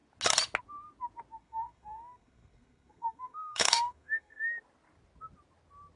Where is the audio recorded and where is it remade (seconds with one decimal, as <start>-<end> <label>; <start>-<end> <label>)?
0.0-1.4 recorded; 1.4-4.4 remade; 4.4-6.0 recorded